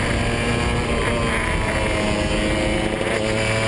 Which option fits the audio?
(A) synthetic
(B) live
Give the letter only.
B